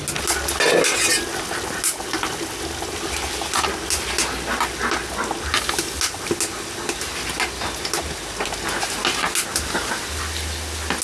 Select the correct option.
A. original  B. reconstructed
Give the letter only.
A